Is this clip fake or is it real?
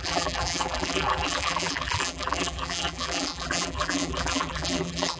fake